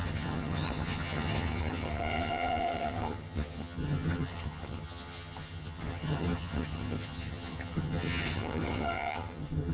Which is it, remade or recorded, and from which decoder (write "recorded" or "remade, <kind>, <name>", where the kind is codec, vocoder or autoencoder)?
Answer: remade, vocoder, HiFi-GAN